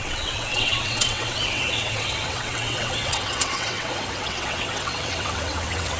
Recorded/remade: remade